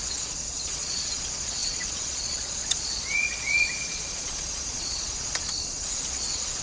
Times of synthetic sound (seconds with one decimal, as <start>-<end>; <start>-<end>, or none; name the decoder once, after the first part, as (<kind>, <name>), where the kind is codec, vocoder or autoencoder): 0.0-6.6 (vocoder, Vocos)